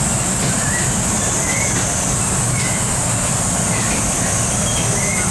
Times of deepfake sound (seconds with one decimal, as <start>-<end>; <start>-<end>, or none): none